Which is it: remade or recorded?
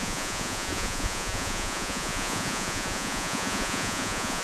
remade